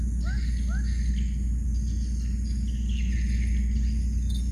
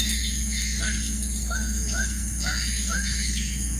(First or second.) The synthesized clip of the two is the second